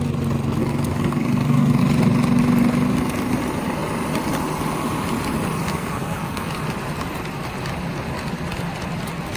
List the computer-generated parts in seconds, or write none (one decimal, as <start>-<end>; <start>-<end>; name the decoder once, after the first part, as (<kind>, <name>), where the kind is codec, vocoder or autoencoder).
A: 0.6-1.8 (codec, SNAC); 5.7-6.5